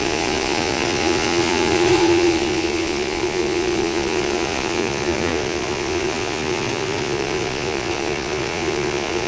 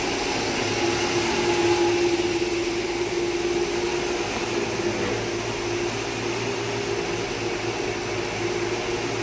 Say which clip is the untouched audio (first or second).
second